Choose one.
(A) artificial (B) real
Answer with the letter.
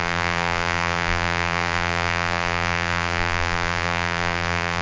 A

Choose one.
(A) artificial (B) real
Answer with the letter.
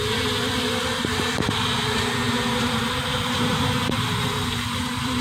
A